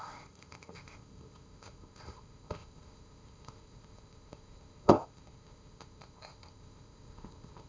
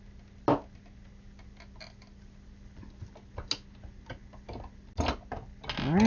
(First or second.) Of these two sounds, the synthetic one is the first